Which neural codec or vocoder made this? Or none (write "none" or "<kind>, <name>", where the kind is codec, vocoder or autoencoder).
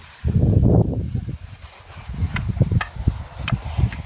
none